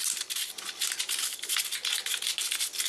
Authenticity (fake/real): real